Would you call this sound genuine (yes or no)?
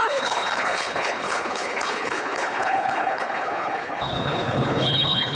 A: no